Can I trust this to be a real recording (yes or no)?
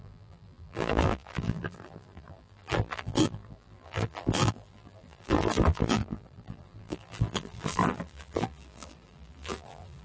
no